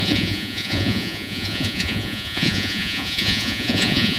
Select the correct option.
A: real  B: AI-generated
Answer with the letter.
B